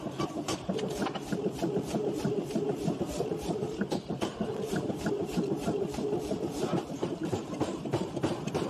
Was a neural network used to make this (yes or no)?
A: yes